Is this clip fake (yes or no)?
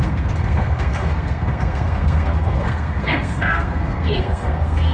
yes